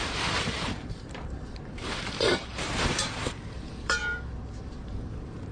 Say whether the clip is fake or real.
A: fake